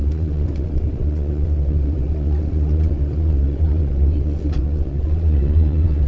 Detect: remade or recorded remade